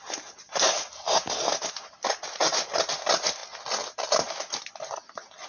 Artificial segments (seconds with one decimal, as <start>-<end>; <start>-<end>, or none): none